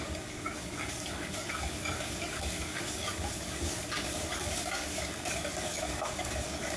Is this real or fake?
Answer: fake